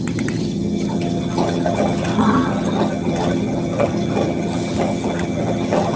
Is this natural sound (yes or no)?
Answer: no